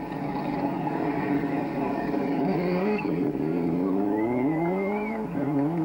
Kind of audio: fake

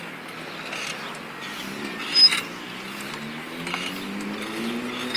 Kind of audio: real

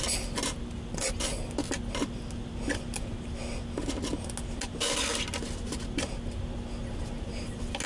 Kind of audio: real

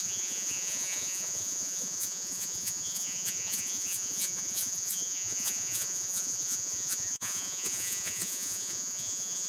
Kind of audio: fake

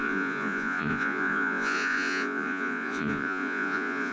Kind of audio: fake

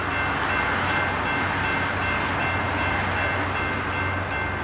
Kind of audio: real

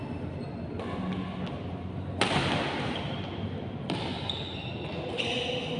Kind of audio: real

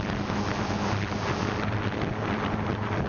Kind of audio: real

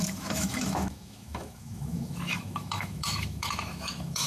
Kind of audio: fake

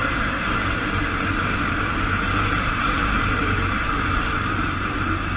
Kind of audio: fake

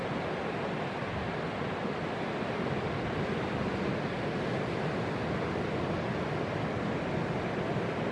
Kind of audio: real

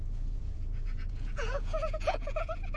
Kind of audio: fake